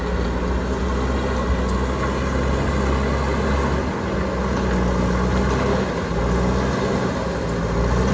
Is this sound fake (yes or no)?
no